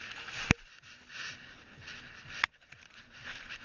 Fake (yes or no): no